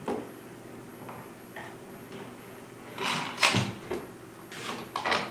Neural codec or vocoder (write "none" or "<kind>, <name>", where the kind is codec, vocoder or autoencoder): none